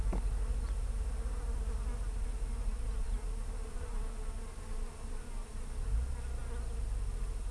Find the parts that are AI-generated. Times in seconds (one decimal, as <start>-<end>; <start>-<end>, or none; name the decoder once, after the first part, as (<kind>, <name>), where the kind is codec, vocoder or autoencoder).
none